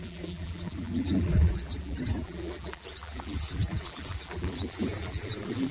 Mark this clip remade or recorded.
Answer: remade